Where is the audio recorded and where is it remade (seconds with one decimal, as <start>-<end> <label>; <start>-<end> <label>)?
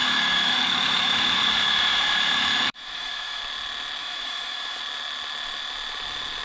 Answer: 0.0-3.4 remade; 3.4-4.0 recorded; 4.0-4.8 remade; 4.8-6.4 recorded